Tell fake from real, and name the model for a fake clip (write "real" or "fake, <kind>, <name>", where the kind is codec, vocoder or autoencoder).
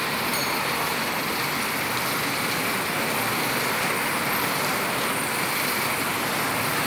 real